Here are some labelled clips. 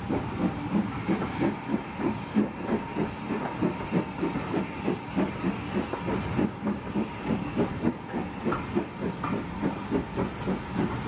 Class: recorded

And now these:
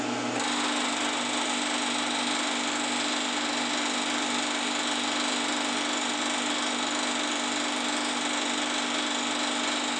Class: recorded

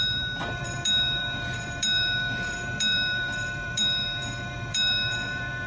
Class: remade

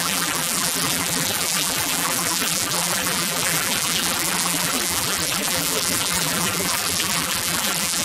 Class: remade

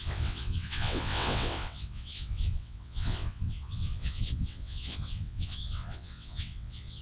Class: remade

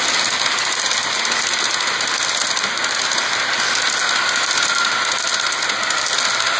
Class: recorded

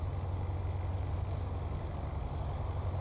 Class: recorded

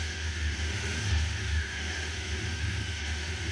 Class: remade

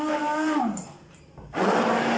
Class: recorded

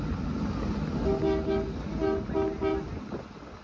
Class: recorded